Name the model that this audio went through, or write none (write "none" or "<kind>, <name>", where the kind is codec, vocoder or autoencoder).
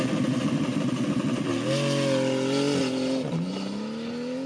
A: none